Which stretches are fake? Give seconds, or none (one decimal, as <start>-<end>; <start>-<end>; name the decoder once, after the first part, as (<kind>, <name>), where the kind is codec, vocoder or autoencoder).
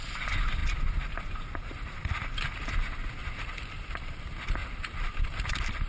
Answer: none